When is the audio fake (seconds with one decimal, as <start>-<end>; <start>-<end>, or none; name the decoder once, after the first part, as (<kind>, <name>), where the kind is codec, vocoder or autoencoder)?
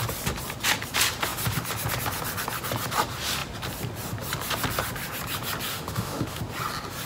5.7-6.4 (autoencoder, DAC-VAE)